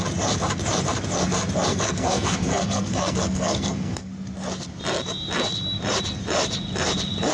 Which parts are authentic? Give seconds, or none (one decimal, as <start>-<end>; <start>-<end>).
0.0-1.7; 4.1-7.3